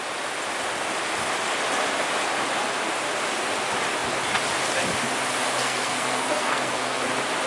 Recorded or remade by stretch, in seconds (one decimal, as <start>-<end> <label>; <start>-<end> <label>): 0.0-5.6 recorded; 5.6-7.0 remade; 7.0-7.5 recorded